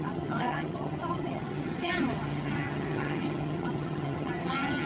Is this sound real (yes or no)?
no